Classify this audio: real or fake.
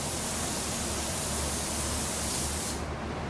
real